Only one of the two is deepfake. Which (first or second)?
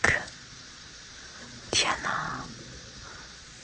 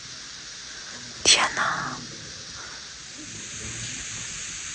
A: first